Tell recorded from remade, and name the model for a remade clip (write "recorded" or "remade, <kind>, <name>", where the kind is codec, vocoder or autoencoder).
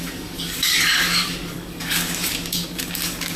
remade, codec, DAC